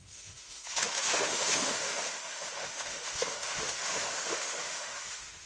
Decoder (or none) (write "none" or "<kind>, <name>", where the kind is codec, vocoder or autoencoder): autoencoder, DAC-VAE